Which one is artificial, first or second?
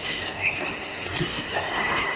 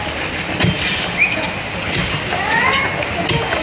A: first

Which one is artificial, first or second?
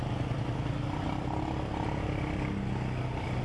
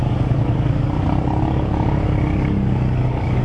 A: second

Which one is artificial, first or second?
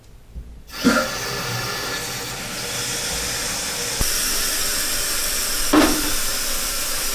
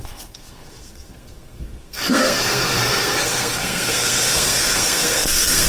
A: second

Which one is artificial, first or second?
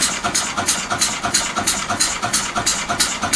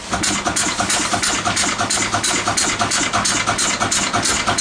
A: first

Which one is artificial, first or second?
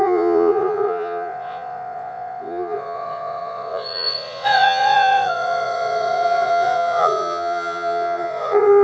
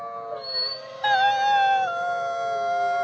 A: first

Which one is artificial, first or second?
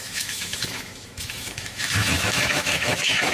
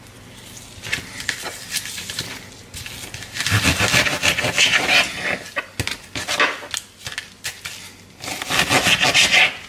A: first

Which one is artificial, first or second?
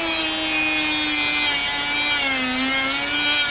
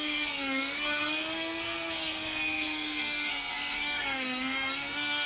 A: second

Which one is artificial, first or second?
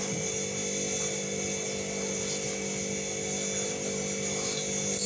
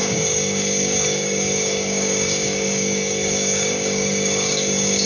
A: second